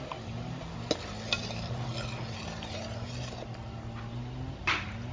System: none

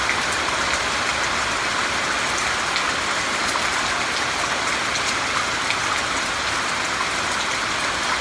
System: none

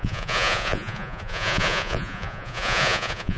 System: vocoder, Vocos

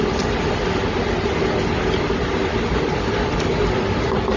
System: none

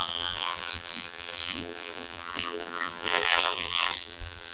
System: vocoder, BigVGAN v2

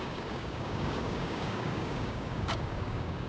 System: codec, DAC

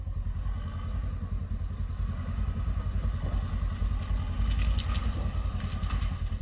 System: none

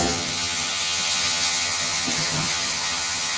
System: vocoder, HiFi-GAN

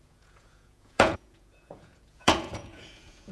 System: vocoder, Vocos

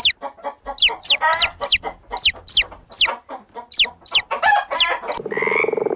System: none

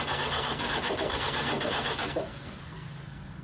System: codec, SNAC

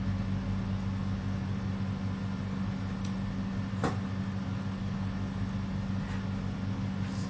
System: none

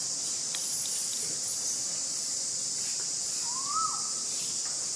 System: none